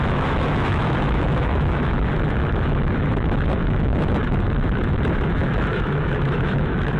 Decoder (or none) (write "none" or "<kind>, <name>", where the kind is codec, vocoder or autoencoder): autoencoder, DAC-VAE